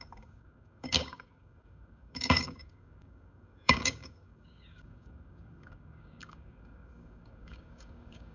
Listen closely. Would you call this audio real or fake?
fake